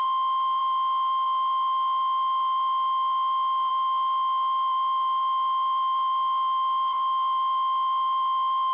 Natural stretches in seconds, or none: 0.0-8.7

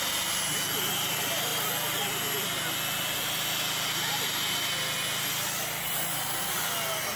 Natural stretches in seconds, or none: 0.0-7.2

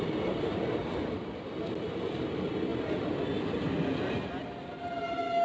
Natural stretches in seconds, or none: 0.0-5.4

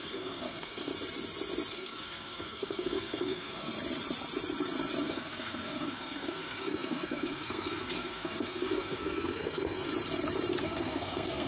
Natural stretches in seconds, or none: 0.9-1.7; 3.7-5.0; 9.9-10.6

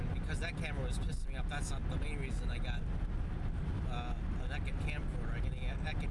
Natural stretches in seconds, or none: 0.0-6.1

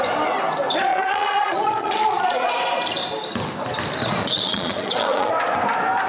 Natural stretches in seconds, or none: 0.0-0.9; 2.5-4.2; 5.3-6.1